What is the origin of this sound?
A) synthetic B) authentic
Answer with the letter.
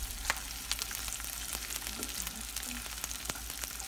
B